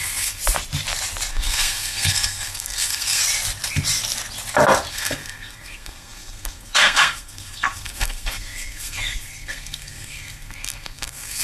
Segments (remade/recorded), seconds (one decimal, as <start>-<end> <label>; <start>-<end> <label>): 0.0-0.4 remade; 0.4-1.3 recorded; 1.3-3.2 remade; 3.2-4.9 recorded; 4.9-11.4 remade